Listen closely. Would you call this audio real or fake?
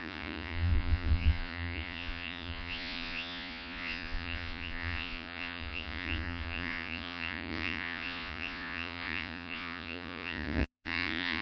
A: fake